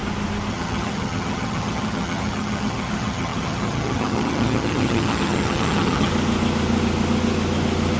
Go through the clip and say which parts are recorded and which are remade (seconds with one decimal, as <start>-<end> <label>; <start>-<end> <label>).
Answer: 0.0-0.5 recorded; 0.5-6.1 remade; 6.1-8.0 recorded